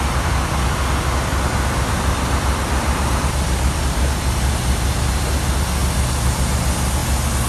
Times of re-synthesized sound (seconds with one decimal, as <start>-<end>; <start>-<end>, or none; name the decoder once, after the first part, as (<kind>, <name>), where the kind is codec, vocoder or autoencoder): 1.3-3.8 (vocoder, BigVGAN v2)